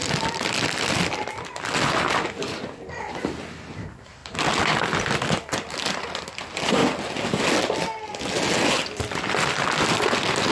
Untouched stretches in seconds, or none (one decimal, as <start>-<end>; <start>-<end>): 0.0-10.5